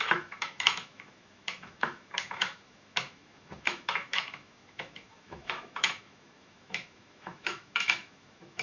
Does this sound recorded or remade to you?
remade